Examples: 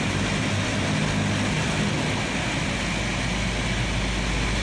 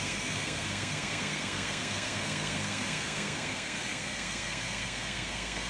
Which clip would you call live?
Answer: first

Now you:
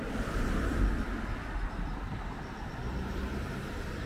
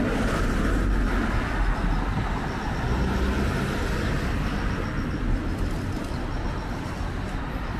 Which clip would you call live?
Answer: second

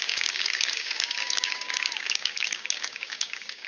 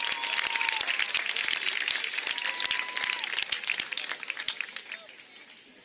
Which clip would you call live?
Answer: second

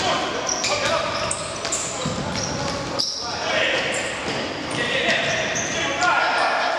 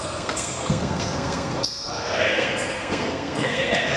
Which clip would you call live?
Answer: first